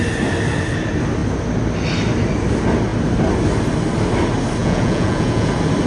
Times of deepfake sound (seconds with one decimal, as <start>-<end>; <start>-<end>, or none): 4.6-5.5